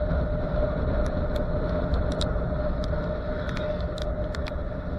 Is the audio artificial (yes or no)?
no